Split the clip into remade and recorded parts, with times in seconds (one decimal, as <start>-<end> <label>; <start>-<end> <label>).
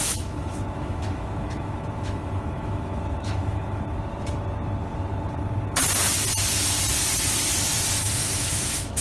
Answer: 0.0-3.8 remade; 3.8-8.0 recorded; 8.0-9.0 remade